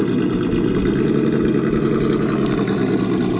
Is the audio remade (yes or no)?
no